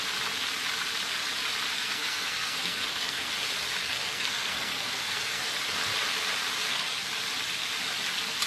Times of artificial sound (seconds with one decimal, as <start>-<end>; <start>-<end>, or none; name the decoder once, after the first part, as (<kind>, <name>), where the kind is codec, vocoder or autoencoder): 1.7-3.3 (codec, SNAC); 3.8-5.5; 6.6-7.1